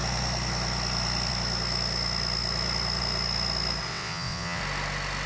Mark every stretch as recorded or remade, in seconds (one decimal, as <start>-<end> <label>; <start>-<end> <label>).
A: 0.0-3.9 recorded; 3.9-4.6 remade; 4.6-5.3 recorded